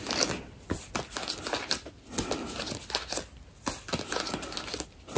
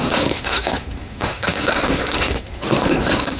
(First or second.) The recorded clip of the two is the first